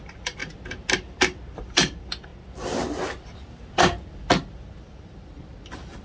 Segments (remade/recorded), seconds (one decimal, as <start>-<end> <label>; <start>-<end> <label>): 0.0-0.4 remade; 0.4-1.5 recorded; 1.5-2.3 remade; 2.3-4.8 recorded; 4.8-6.0 remade